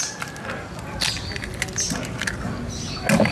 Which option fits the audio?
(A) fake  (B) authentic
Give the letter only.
B